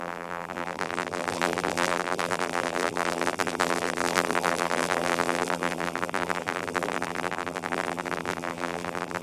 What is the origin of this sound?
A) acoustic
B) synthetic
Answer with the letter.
B